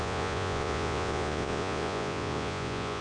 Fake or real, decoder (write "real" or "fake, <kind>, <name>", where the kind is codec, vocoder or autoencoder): fake, vocoder, Vocos